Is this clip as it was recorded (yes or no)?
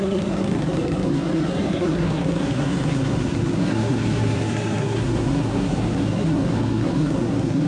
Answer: no